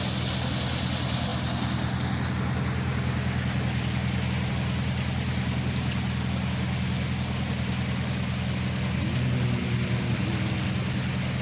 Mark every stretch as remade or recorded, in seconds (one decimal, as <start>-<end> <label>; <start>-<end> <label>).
0.0-11.4 recorded